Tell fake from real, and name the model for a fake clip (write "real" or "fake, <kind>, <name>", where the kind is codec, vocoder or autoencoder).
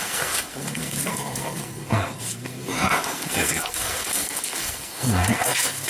fake, codec, SNAC